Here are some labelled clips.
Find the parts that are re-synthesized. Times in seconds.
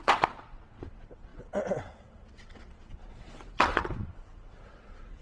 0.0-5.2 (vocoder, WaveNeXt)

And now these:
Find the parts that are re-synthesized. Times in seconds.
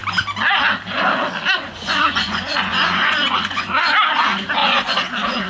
1.6-3.7 (vocoder, Vocos); 4.6-5.1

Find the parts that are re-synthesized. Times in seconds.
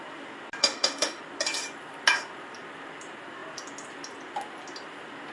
0.6-1.2 (autoencoder, DAC-VAE)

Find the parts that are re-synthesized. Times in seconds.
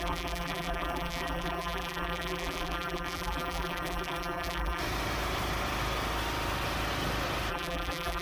0.0-4.8 (vocoder, BigVGAN v2); 7.5-8.2